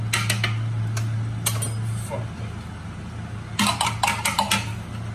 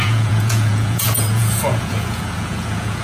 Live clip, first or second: first